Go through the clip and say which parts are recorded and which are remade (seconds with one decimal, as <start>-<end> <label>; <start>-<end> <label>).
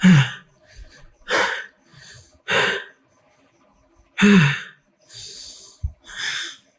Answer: 0.0-6.8 recorded